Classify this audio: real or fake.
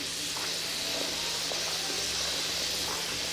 real